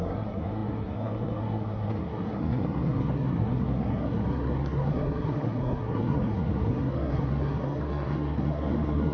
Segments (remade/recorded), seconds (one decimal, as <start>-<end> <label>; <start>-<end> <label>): 0.0-9.1 remade